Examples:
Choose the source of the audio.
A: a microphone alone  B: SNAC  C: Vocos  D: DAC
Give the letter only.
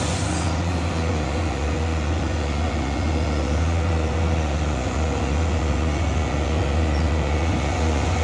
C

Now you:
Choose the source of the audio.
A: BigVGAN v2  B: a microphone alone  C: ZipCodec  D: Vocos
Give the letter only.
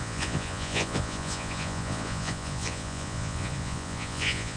D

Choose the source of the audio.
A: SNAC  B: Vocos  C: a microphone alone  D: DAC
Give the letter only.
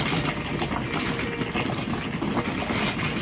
C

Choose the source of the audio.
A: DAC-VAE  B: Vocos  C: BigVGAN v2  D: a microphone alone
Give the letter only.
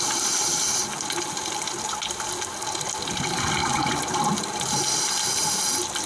D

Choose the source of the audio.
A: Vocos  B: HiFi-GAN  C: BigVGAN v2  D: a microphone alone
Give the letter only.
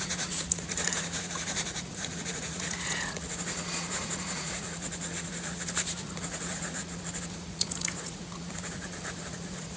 A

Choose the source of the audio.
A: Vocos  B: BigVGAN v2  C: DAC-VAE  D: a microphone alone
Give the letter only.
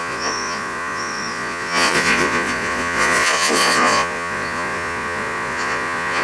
A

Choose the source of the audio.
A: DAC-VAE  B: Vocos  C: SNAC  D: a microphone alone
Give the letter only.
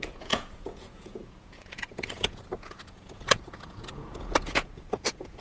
B